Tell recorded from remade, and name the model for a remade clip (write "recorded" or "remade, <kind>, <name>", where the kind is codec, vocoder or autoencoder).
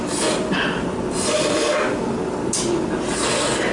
recorded